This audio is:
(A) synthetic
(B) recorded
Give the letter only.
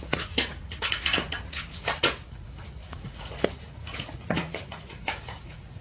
A